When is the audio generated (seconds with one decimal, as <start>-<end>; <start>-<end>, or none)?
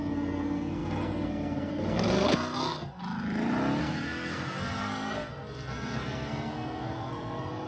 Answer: 0.0-3.0; 3.8-7.7